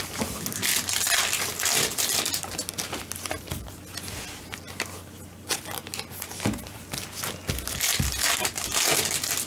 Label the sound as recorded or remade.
recorded